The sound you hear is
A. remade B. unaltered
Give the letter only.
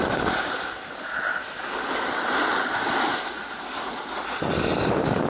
B